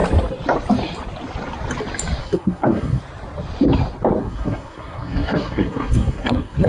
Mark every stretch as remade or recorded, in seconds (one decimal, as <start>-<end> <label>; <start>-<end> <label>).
0.0-2.2 recorded; 2.2-3.0 remade; 3.0-4.2 recorded; 4.2-6.7 remade

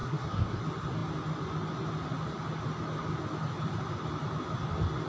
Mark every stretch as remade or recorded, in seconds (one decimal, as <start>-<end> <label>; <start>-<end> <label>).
0.0-0.6 remade; 0.6-5.1 recorded

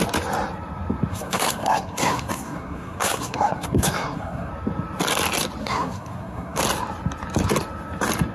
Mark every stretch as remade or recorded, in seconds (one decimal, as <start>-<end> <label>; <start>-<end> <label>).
0.0-1.1 recorded; 1.1-4.5 remade; 4.5-5.6 recorded; 5.6-6.6 remade; 6.6-8.3 recorded